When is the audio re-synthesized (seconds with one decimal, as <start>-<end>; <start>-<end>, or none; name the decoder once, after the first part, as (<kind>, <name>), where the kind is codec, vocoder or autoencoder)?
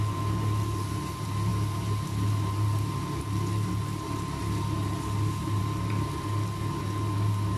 none